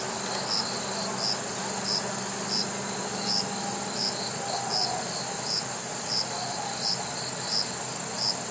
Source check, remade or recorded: recorded